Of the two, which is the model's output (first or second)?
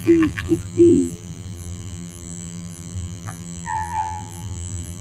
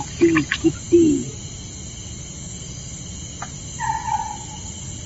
first